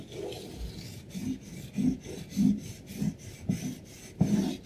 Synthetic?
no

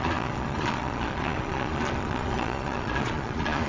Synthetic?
yes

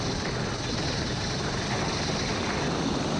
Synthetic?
no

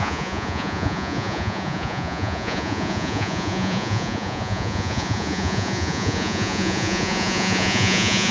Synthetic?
yes